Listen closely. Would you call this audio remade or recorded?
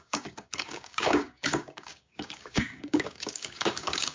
remade